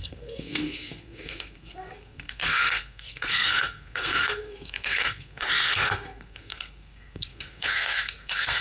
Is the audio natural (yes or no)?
no